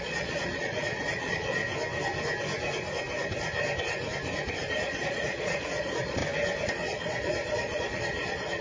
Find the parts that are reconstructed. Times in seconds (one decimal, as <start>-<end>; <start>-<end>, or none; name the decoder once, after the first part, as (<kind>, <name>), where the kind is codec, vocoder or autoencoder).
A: 0.0-1.6 (vocoder, Vocos); 4.7-6.2; 6.7-8.6